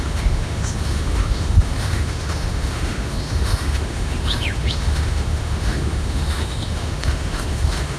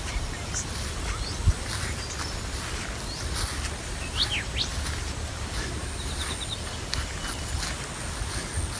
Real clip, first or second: second